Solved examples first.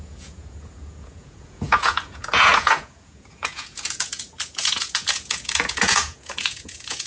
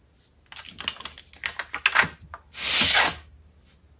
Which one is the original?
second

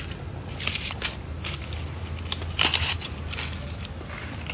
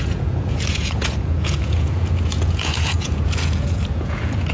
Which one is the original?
first